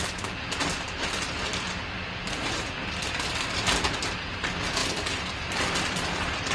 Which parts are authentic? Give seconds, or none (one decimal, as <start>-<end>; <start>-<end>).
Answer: 0.0-6.5